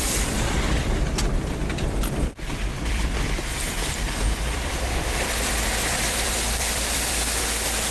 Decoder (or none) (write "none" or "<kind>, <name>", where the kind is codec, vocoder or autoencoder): vocoder, BigVGAN v2